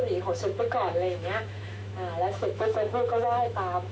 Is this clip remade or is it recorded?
remade